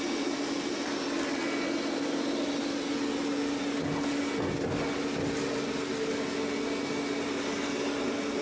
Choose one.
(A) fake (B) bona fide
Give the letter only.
B